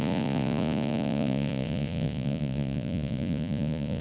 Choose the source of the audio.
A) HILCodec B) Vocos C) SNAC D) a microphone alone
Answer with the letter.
B